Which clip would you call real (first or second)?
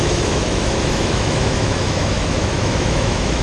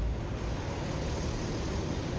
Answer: second